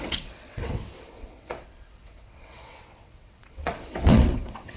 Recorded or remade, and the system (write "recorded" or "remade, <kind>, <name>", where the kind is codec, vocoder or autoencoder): remade, vocoder, WaveNeXt